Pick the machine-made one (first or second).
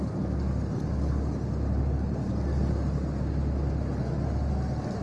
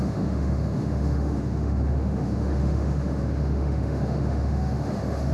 second